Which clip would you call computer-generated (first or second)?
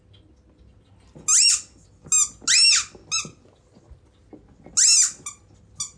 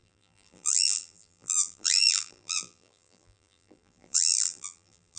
second